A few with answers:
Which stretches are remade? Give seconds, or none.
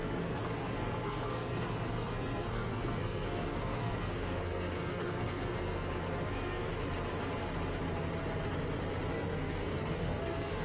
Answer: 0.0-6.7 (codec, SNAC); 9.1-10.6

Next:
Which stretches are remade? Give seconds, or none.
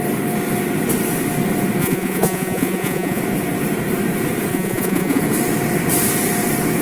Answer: 1.8-3.2 (vocoder, Vocos); 4.5-5.2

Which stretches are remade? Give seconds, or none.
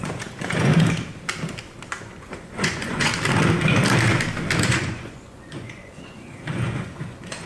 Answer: 0.0-0.7 (vocoder, Vocos); 2.0-3.1; 4.6-7.5